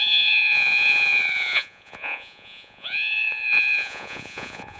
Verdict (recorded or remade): remade